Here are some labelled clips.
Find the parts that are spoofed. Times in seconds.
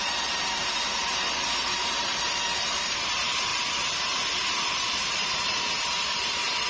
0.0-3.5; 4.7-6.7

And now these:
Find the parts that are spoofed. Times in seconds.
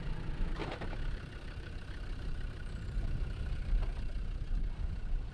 0.6-3.8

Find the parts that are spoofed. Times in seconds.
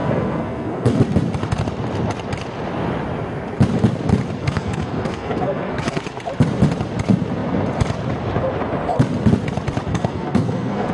0.0-1.0; 4.4-6.0; 9.9-10.9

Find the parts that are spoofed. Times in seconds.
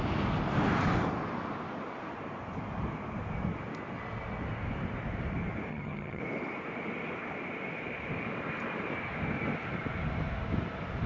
5.7-6.2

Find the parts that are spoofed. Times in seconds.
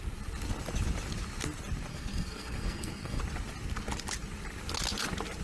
1.9-3.2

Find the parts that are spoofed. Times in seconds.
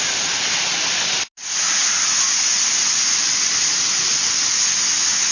none